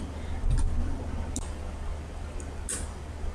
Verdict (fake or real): real